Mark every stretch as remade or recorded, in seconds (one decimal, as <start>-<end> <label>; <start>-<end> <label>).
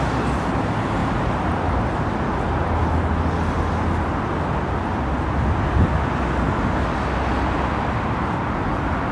0.0-9.1 recorded